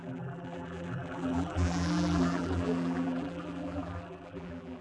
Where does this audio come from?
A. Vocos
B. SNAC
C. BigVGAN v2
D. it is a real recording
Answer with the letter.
C